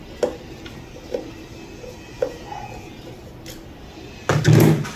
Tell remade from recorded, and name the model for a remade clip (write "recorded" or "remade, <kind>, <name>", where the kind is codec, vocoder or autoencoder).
recorded